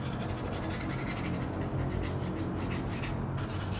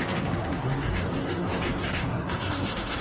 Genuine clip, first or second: first